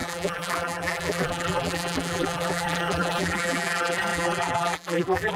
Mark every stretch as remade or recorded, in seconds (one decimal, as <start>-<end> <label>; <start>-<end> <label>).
0.0-5.4 remade